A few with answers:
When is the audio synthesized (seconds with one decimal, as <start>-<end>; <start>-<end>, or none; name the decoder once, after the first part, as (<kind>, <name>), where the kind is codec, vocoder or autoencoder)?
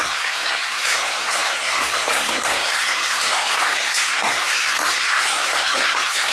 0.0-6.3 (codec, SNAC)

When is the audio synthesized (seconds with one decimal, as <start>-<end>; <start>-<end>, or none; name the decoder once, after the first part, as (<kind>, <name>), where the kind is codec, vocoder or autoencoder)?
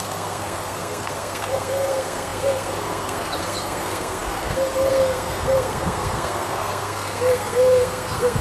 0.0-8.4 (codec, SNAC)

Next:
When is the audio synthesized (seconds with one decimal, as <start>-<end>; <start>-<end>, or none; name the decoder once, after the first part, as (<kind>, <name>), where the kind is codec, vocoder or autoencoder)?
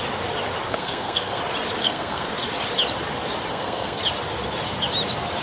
0.7-1.4 (codec, SNAC); 1.8-2.3; 3.5-4.0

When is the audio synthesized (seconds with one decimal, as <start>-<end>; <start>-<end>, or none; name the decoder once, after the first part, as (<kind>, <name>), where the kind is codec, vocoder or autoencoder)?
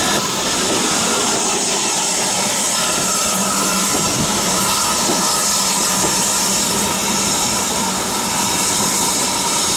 none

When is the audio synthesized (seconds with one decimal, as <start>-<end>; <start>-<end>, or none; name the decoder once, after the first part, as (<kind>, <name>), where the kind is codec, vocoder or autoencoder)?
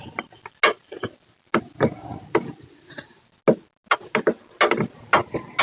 none